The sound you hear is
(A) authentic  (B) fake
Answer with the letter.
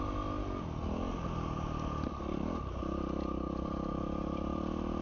A